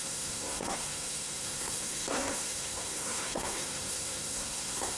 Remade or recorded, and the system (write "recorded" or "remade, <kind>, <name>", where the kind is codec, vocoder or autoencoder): remade, codec, SNAC